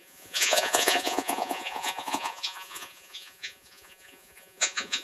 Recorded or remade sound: remade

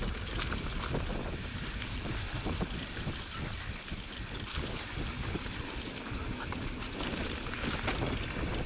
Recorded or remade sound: recorded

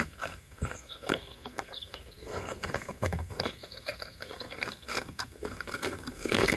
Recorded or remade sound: remade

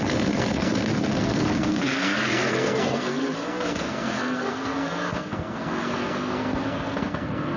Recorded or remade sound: remade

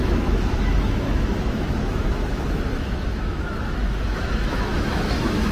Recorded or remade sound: remade